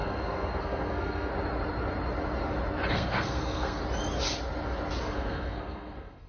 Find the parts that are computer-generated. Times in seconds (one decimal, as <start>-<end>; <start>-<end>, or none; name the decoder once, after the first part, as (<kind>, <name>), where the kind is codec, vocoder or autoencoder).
0.0-1.3 (codec, SNAC); 2.9-3.8; 5.0-6.3